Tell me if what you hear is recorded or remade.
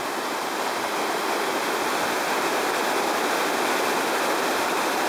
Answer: remade